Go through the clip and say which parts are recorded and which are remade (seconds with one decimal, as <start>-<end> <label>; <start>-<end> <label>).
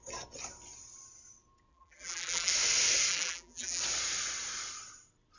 0.0-1.7 recorded; 1.7-2.5 remade; 2.5-3.1 recorded; 3.1-3.8 remade; 3.8-5.4 recorded